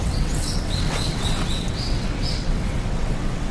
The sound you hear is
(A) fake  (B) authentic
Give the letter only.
A